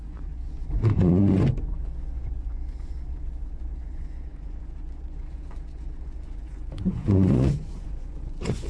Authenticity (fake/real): fake